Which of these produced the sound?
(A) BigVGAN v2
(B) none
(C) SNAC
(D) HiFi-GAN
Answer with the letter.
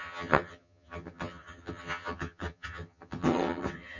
D